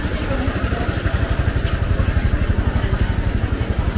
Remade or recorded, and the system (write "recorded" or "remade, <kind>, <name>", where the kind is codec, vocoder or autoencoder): recorded